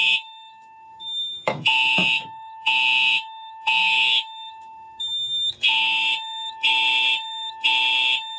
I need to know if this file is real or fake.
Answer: fake